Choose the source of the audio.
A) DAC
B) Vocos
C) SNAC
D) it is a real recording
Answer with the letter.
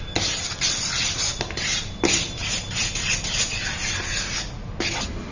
D